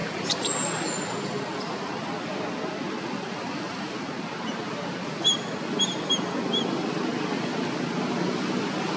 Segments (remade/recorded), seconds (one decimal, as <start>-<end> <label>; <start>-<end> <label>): 0.0-9.0 recorded